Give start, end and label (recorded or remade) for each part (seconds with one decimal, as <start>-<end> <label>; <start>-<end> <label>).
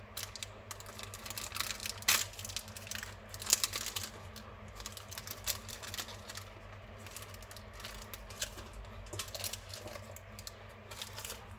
0.0-11.6 recorded